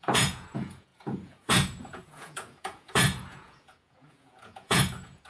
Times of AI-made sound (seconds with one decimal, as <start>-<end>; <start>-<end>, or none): 0.0-5.3